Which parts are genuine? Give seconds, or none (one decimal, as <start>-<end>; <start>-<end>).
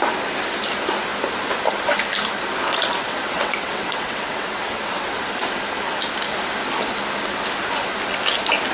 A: 0.0-3.0; 5.1-8.7